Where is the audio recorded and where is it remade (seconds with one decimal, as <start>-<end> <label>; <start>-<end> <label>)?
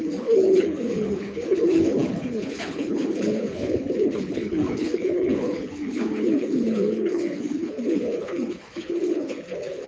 0.0-9.9 remade